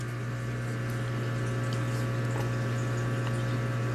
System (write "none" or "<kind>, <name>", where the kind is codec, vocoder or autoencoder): none